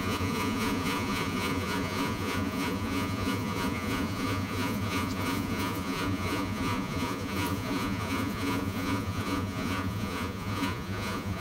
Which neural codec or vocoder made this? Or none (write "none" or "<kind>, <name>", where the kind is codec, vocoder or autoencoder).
vocoder, Vocos